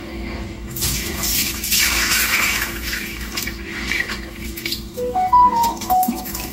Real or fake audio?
fake